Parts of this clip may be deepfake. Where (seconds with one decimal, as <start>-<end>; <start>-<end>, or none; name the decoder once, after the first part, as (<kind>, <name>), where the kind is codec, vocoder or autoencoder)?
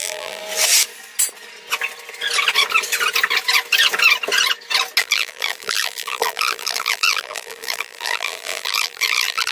0.0-0.4 (vocoder, BigVGAN v2); 5.0-9.5